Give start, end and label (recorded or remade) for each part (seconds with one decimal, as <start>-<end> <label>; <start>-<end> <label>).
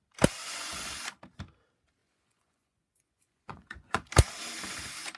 0.0-0.4 recorded; 0.4-0.9 remade; 0.9-2.0 recorded; 2.0-4.1 remade; 4.1-5.2 recorded